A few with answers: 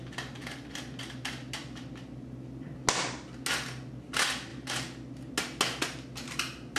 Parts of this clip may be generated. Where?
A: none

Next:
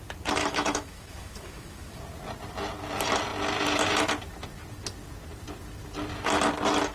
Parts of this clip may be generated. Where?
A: 0.4-2.0 (autoencoder, DAC-VAE)

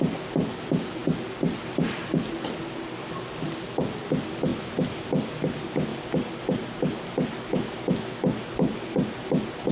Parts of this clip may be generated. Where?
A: none

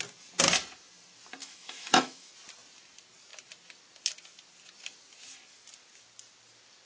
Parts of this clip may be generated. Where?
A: 1.4-2.3 (autoencoder, DAC-VAE)

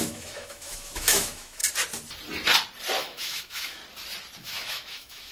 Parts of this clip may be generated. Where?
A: 0.0-1.6 (autoencoder, DAC-VAE); 3.0-3.8; 4.4-5.3